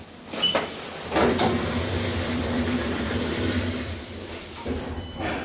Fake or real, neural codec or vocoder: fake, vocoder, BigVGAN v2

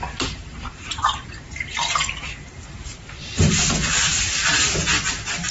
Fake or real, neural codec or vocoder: fake, vocoder, BigVGAN v2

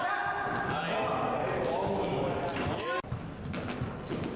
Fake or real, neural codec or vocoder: real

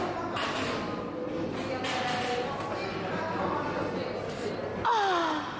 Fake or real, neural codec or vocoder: real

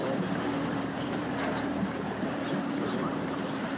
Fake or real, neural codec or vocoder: fake, vocoder, BigVGAN v2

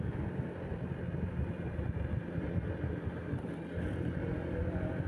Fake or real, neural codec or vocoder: real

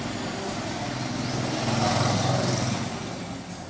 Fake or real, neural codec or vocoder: real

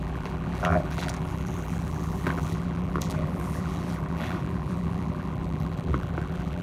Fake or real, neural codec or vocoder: fake, vocoder, BigVGAN v2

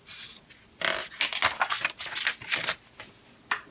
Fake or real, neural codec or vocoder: real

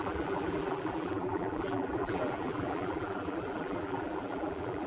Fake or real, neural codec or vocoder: fake, vocoder, BigVGAN v2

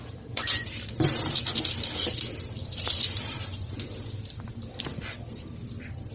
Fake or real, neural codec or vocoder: fake, vocoder, BigVGAN v2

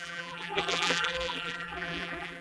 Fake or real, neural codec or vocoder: fake, vocoder, BigVGAN v2